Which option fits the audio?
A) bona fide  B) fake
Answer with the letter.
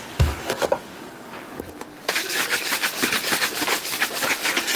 B